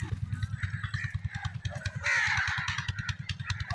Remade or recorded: remade